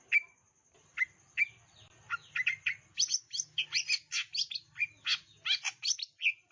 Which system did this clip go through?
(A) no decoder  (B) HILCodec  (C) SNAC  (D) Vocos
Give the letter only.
A